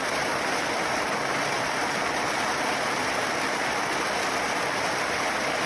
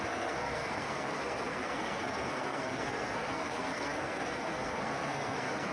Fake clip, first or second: second